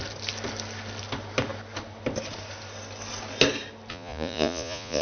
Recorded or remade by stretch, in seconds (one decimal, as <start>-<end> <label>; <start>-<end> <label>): 0.0-3.9 recorded; 3.9-5.0 remade